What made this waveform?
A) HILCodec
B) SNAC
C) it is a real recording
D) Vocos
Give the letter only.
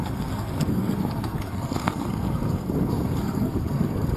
B